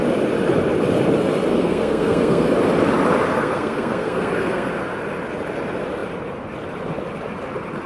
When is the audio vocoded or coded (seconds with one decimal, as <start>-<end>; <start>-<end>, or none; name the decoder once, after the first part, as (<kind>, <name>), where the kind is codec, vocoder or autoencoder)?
1.5-2.5 (codec, SNAC); 3.3-4.7